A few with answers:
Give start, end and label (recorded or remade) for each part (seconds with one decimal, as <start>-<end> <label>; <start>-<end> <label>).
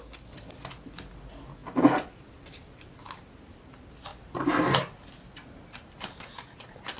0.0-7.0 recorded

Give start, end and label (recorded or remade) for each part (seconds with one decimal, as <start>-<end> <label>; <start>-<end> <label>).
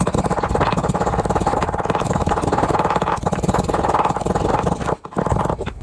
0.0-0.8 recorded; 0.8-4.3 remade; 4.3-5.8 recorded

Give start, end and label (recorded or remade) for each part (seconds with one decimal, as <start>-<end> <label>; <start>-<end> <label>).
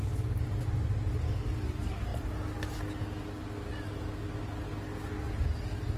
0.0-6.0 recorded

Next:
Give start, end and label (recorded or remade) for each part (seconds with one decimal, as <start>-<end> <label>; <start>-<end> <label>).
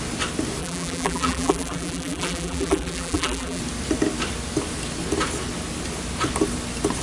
0.0-0.6 recorded; 0.6-3.6 remade; 3.6-7.0 recorded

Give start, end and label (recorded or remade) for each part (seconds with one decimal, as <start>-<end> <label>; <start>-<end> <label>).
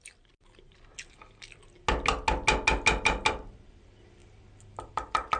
0.0-0.9 remade; 0.9-3.3 recorded; 3.3-4.2 remade; 4.2-4.9 recorded; 4.9-5.4 remade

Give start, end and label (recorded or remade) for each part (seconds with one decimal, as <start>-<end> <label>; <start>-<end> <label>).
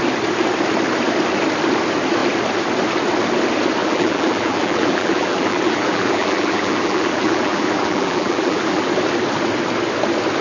0.0-3.8 recorded; 3.8-8.9 remade; 8.9-10.4 recorded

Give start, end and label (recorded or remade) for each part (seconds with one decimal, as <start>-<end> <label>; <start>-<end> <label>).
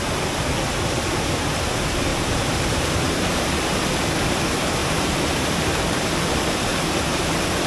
0.0-2.1 recorded; 2.1-3.4 remade; 3.4-4.8 recorded; 4.8-5.8 remade; 5.8-6.7 recorded; 6.7-7.3 remade; 7.3-7.7 recorded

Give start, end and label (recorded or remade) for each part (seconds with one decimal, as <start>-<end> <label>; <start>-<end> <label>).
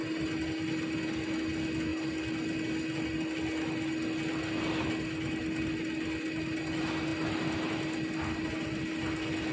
0.0-9.5 recorded